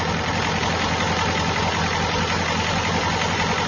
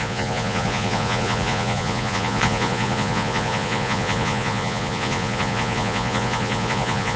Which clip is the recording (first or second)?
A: first